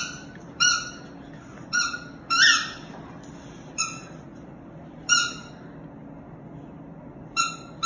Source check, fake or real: real